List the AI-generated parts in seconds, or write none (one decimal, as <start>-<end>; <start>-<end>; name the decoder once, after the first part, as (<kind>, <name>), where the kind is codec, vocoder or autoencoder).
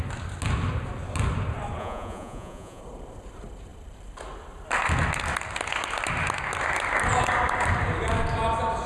1.8-2.8 (vocoder, Vocos)